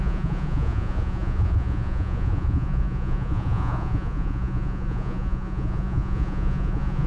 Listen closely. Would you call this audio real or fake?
fake